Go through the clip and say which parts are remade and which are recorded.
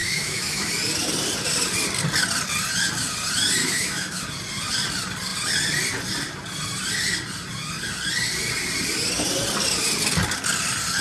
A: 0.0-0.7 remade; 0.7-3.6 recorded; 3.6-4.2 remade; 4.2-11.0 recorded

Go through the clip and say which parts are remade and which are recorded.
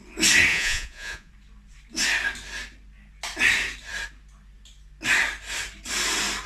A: 0.0-0.5 recorded; 0.5-1.3 remade; 1.3-6.5 recorded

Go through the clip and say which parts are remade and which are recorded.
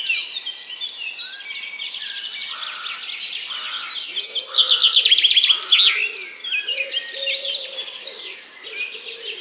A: 0.0-9.4 recorded